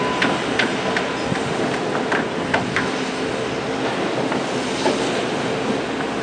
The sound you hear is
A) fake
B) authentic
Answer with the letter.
B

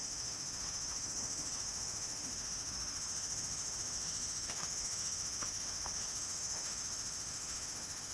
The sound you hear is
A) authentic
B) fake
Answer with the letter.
B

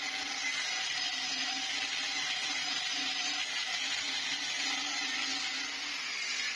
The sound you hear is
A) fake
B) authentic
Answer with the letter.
B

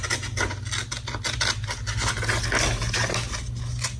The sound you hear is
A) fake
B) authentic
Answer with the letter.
B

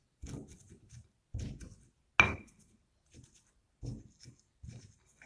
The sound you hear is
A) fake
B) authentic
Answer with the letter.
B